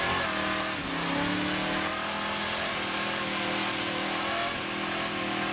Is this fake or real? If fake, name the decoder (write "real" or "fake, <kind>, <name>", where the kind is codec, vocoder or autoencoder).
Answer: real